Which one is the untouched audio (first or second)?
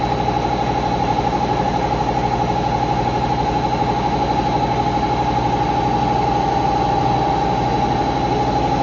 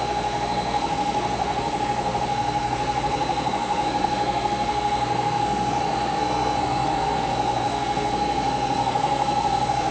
first